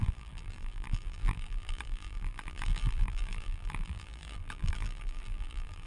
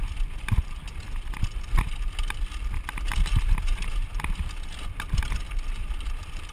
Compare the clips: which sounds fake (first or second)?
first